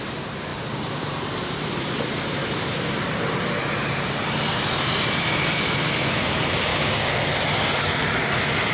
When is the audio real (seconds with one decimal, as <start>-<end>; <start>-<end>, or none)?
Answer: 6.7-8.7